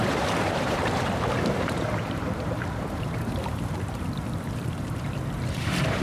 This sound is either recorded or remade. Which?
remade